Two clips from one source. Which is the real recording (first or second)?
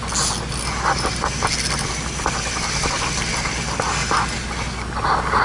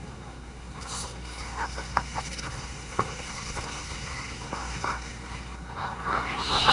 first